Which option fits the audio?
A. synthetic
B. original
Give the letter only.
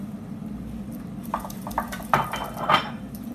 A